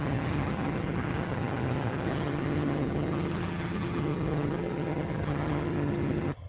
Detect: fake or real fake